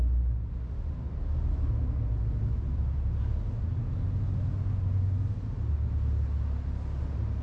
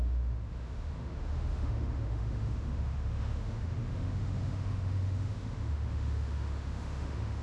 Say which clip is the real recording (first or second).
first